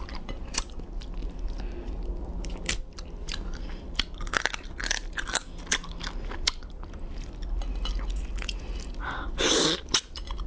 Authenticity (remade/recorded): recorded